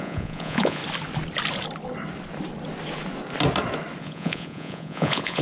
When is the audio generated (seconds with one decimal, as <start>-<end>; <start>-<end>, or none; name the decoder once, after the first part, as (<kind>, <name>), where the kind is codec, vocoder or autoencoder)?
0.0-0.8 (vocoder, Vocos); 4.0-5.4